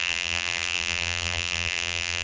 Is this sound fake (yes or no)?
yes